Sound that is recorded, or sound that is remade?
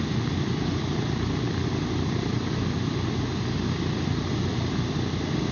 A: recorded